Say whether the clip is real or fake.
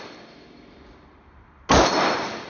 real